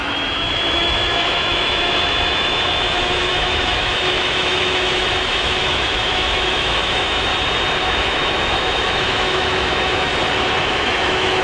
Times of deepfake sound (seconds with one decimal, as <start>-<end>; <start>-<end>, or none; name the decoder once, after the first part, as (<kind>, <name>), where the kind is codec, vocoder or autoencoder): 0.0-7.3 (autoencoder, DAC-VAE); 7.8-10.1; 10.6-11.4